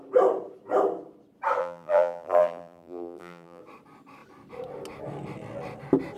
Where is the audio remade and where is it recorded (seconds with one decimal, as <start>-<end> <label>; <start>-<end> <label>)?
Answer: 0.0-1.6 recorded; 1.6-3.6 remade; 3.6-6.2 recorded